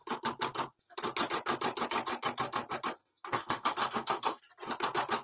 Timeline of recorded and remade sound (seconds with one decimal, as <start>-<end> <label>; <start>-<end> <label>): 0.0-3.0 recorded; 3.0-4.4 remade; 4.4-5.2 recorded